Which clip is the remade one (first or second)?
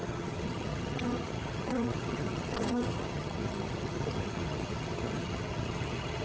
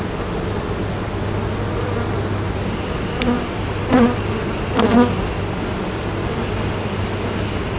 first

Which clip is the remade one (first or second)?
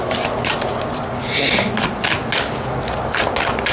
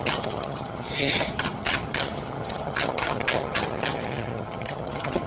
second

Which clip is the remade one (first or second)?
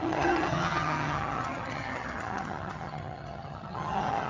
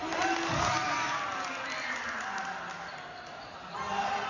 first